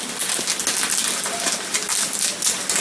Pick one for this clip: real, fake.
real